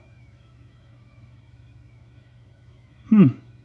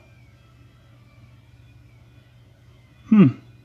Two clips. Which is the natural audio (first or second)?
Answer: second